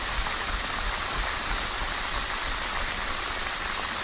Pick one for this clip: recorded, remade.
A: recorded